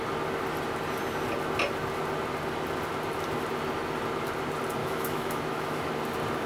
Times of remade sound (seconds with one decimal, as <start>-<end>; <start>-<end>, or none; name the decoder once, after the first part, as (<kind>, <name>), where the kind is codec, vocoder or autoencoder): 4.8-5.9 (autoencoder, DAC-VAE)